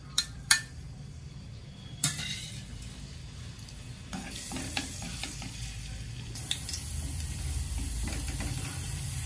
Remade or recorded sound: remade